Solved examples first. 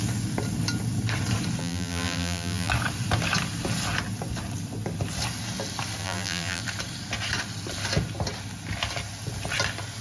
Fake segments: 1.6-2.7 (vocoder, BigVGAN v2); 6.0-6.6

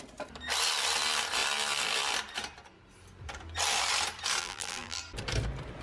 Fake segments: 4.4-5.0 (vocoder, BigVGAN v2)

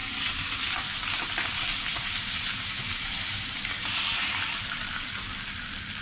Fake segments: 0.0-0.8 (vocoder, BigVGAN v2); 1.9-4.0